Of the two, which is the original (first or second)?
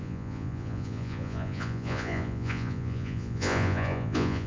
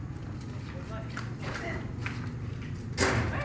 second